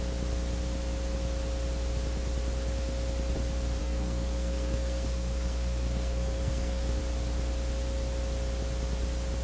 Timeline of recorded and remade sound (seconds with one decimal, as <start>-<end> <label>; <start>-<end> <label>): 0.0-3.8 recorded; 3.8-7.0 remade; 7.0-9.4 recorded